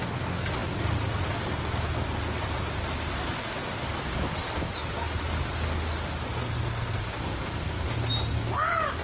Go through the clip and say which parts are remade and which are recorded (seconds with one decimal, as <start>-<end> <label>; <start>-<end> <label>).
0.0-6.4 recorded; 6.4-7.0 remade; 7.0-9.0 recorded